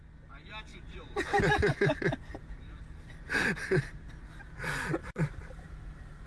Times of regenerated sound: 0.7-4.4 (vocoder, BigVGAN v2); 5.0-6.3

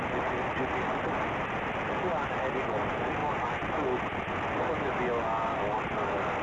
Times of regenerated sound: none

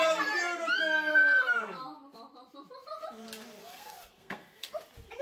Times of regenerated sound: 1.1-1.8 (codec, SNAC); 3.6-4.7

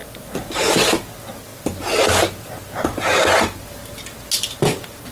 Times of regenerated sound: 0.0-1.5 (vocoder, BigVGAN v2); 2.8-3.8; 4.6-5.1

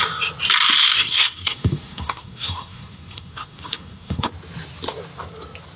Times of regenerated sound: 0.8-4.3 (codec, SNAC)